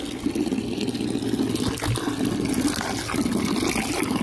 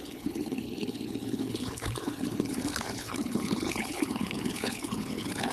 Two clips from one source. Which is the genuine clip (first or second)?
first